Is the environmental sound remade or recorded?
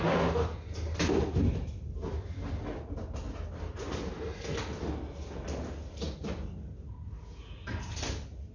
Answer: recorded